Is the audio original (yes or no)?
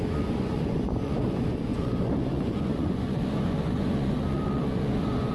no